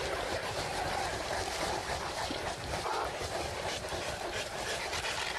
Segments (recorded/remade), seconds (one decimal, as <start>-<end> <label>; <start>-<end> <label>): 0.0-5.4 recorded